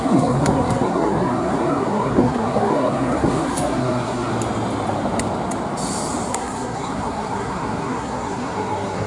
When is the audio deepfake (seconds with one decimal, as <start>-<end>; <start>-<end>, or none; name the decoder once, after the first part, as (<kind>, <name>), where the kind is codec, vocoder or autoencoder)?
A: 0.0-4.3 (codec, SNAC); 6.3-9.1